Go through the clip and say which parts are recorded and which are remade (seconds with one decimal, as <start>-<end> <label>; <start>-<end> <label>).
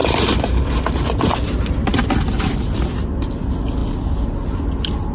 0.0-5.1 recorded